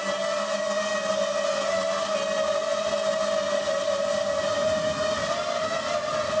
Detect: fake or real real